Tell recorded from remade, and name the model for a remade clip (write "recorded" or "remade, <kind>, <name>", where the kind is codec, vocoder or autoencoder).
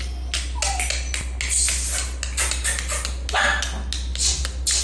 recorded